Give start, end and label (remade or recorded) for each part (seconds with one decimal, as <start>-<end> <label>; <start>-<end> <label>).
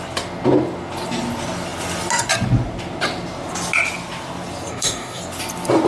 0.0-4.7 recorded; 4.7-5.2 remade; 5.2-5.9 recorded